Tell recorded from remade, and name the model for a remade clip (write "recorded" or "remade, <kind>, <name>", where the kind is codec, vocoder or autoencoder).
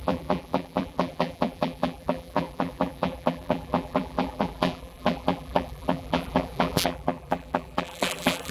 remade, vocoder, BigVGAN v2